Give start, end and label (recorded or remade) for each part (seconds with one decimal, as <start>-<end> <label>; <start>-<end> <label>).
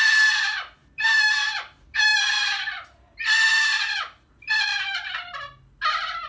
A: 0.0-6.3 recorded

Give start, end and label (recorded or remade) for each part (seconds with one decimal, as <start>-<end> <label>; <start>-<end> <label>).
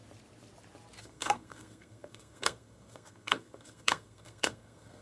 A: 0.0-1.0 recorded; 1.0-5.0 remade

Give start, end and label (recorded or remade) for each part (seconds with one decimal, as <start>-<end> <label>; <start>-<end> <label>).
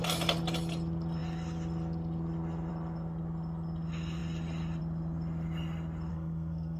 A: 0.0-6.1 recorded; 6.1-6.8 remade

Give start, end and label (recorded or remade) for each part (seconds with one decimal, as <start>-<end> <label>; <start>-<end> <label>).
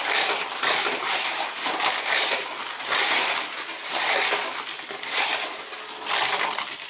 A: 0.0-6.9 recorded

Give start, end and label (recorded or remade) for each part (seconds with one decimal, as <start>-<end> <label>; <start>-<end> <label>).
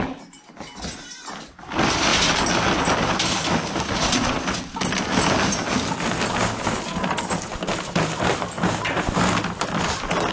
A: 0.0-10.3 recorded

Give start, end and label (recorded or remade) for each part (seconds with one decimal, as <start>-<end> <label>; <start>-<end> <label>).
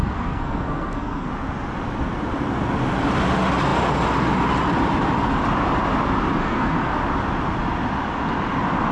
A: 0.0-1.3 remade; 1.3-6.4 recorded; 6.4-6.9 remade; 6.9-8.9 recorded